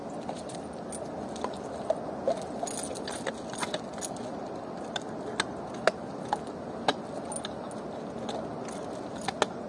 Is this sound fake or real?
real